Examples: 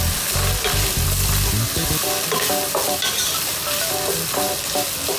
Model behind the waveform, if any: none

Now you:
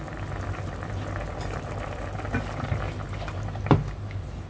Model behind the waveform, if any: none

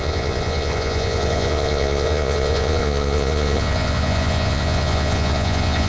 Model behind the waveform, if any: vocoder, Vocos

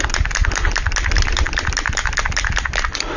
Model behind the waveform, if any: none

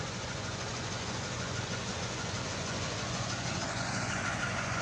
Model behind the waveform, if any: vocoder, Vocos